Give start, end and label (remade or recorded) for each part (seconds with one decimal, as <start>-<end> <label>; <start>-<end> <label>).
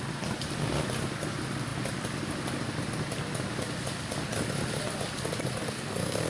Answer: 0.0-5.6 recorded; 5.6-6.3 remade